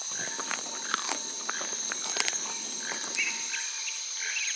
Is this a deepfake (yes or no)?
no